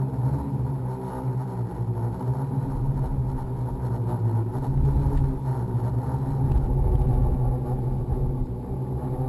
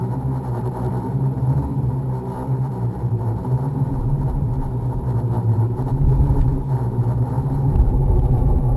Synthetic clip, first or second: second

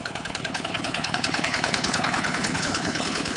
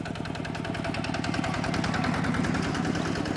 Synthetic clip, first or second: first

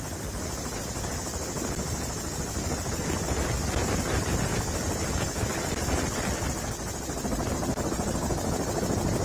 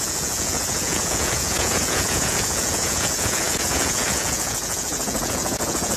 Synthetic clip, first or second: second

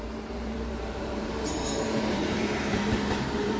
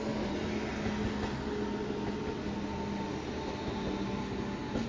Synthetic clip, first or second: first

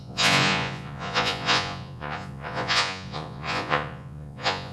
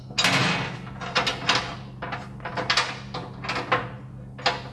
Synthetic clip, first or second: first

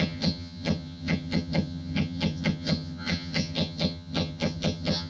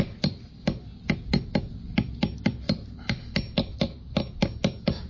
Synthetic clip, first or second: first